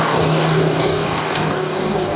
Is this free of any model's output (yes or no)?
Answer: no